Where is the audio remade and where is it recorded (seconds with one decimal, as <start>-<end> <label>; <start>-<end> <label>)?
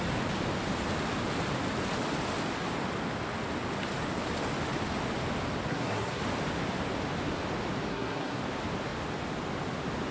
0.0-5.7 recorded; 5.7-6.2 remade; 6.2-7.9 recorded; 7.9-8.4 remade; 8.4-10.1 recorded